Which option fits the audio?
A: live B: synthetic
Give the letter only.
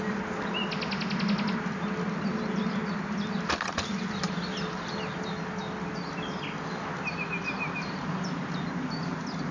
A